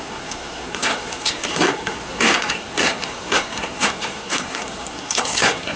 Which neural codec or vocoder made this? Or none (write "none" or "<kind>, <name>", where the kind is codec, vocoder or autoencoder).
codec, SNAC